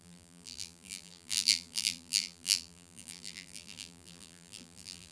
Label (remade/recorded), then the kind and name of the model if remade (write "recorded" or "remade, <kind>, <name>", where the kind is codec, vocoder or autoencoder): remade, vocoder, BigVGAN v2